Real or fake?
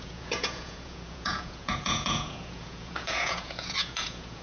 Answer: fake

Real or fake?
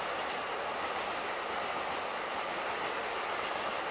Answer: real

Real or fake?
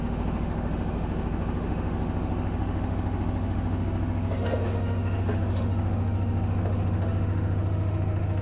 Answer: fake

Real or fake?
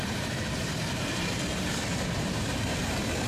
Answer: fake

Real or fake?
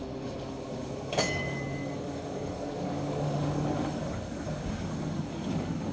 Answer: fake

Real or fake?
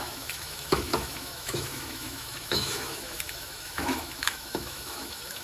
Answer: fake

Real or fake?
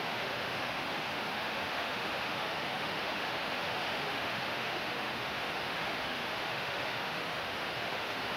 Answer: fake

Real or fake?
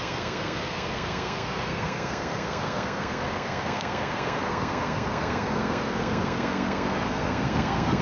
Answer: fake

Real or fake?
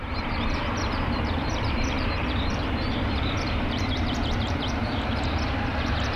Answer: fake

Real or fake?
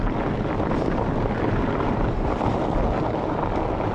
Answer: real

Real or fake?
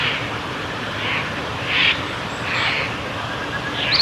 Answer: real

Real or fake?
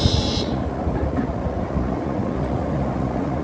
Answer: fake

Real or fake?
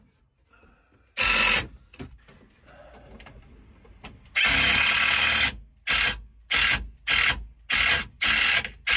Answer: real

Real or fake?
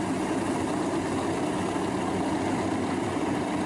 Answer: real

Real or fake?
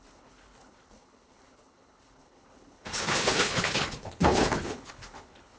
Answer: fake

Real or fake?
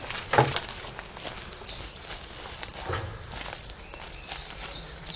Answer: real